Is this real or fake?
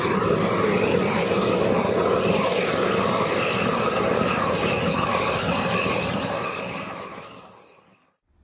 real